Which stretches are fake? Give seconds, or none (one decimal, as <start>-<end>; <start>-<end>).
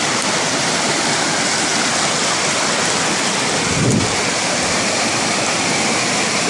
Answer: none